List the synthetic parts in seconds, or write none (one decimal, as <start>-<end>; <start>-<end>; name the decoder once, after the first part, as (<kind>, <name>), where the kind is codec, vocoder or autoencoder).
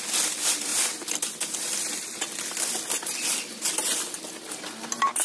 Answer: 0.7-1.9 (vocoder, BigVGAN v2)